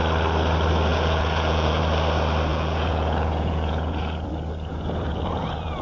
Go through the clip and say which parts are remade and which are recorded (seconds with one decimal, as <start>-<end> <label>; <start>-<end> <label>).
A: 0.0-0.9 recorded; 0.9-1.8 remade; 1.8-2.5 recorded; 2.5-4.3 remade; 4.3-4.7 recorded; 4.7-5.8 remade